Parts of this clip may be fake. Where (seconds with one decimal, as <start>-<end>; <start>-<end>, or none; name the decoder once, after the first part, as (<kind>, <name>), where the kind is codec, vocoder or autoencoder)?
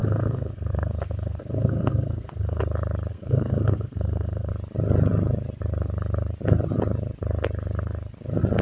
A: 0.0-2.6 (codec, SNAC); 3.1-4.5